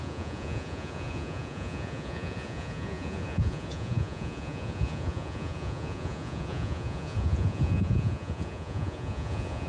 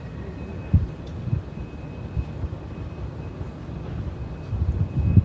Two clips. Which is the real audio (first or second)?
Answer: second